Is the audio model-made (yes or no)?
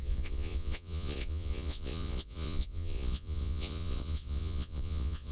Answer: yes